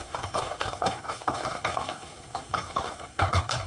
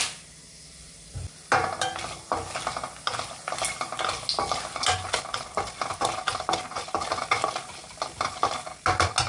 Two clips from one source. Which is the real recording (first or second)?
second